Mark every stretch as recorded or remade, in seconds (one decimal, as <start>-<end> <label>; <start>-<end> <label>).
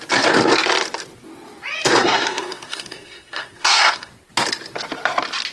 0.0-2.0 recorded; 2.0-4.1 remade; 4.1-5.5 recorded